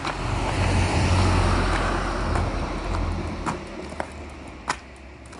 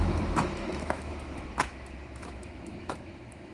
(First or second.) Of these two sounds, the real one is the first